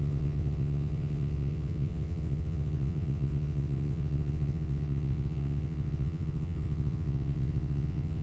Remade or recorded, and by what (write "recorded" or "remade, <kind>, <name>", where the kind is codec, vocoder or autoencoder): remade, vocoder, WaveNeXt